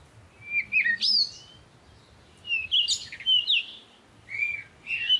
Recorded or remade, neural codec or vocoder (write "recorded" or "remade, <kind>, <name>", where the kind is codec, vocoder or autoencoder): recorded